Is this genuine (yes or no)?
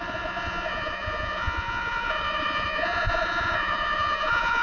no